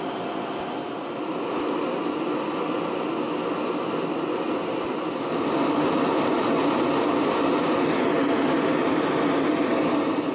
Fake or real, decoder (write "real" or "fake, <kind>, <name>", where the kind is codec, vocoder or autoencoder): real